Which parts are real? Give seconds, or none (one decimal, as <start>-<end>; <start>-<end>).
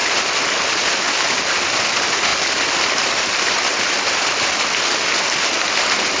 0.0-6.2